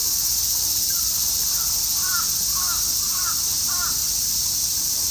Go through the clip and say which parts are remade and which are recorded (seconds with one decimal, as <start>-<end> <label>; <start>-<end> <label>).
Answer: 0.0-1.8 remade; 1.8-4.0 recorded; 4.0-5.1 remade